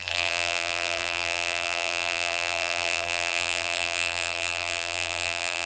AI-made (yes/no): yes